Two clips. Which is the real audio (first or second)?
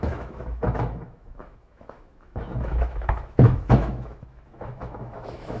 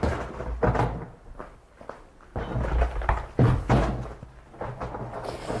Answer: second